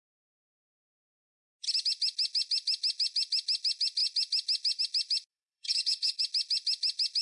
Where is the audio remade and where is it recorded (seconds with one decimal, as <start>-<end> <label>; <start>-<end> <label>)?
0.0-5.3 recorded; 5.3-6.2 remade; 6.2-7.2 recorded